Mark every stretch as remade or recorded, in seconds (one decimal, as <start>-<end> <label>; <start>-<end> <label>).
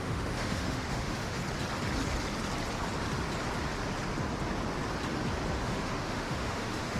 0.0-1.4 remade; 1.4-5.5 recorded; 5.5-7.0 remade